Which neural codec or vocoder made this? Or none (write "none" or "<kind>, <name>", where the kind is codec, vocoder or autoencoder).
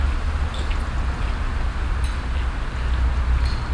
none